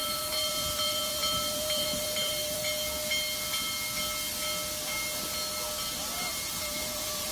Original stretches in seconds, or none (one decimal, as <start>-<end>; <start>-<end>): 2.6-6.0

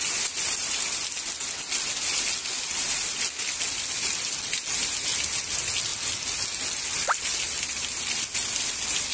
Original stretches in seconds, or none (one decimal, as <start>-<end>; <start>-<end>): 0.0-9.1

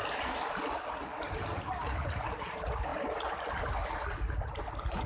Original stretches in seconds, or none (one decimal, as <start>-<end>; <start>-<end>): 0.0-1.1; 1.7-5.1

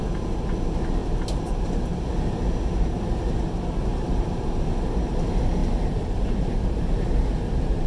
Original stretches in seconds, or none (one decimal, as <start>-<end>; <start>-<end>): 0.0-1.0; 2.1-3.9; 4.7-5.6; 7.3-7.9

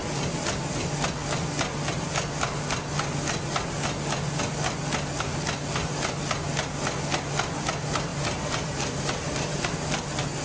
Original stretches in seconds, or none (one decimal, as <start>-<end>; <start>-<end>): 0.0-8.1; 10.0-10.4

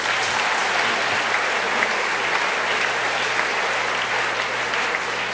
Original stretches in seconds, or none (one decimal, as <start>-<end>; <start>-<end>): 0.0-0.6; 3.8-5.3

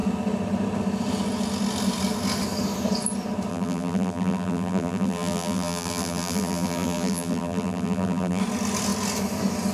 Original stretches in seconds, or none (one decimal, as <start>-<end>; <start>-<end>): 0.0-3.5; 8.4-9.7